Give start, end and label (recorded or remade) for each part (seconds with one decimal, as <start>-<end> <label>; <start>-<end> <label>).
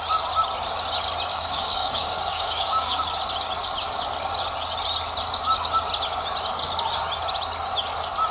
0.0-1.3 recorded; 1.3-3.0 remade; 3.0-8.3 recorded